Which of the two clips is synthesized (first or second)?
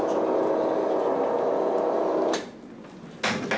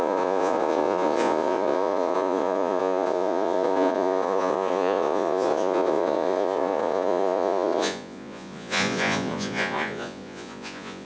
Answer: second